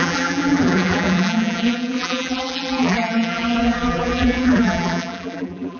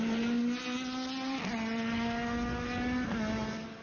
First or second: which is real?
second